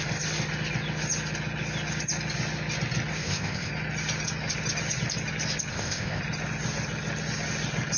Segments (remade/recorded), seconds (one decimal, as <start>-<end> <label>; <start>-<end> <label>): 0.0-3.2 recorded; 3.2-3.7 remade; 3.7-5.7 recorded; 5.7-6.2 remade; 6.2-8.0 recorded